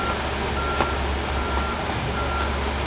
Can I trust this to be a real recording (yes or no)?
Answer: yes